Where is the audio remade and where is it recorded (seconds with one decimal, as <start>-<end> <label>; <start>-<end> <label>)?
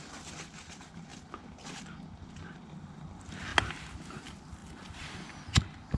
0.0-1.1 remade; 1.1-2.6 recorded; 2.6-3.5 remade; 3.5-4.1 recorded; 4.1-6.0 remade